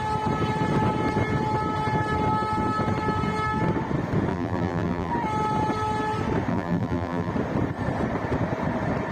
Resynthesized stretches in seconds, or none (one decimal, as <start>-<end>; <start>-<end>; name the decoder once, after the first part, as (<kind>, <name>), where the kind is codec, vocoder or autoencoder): 4.3-5.1 (vocoder, BigVGAN v2); 6.5-7.3